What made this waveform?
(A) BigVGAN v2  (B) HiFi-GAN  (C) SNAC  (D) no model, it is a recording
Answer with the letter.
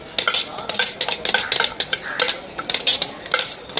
D